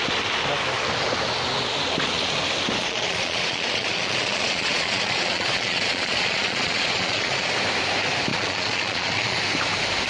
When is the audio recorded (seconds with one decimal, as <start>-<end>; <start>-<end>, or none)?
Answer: 0.0-2.8; 7.5-8.3; 9.4-10.1